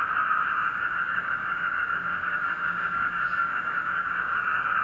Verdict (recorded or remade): remade